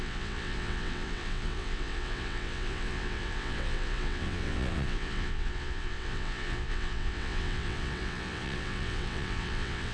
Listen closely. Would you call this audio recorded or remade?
remade